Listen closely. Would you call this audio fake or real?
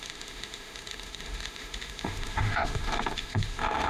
fake